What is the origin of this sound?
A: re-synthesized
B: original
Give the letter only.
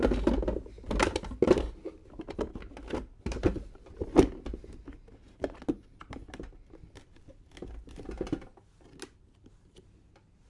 B